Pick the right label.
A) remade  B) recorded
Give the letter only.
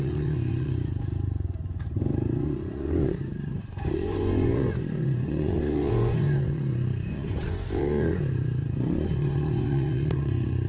A